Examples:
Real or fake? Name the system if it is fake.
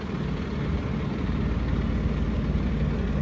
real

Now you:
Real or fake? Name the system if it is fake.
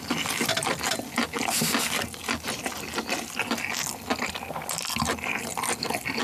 real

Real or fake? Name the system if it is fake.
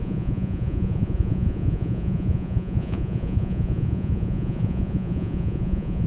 fake, vocoder, Vocos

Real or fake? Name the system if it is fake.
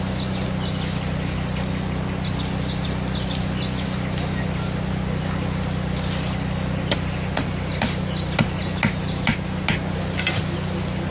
real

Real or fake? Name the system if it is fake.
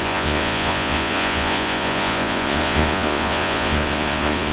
fake, vocoder, Vocos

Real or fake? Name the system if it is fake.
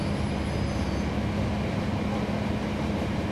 real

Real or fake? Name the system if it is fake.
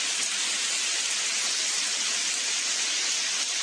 real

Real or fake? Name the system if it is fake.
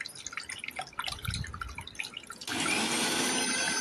real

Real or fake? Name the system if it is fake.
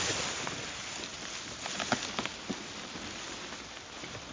real